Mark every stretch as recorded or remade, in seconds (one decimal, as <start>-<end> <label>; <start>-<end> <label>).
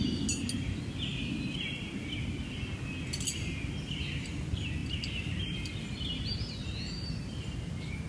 0.0-8.1 recorded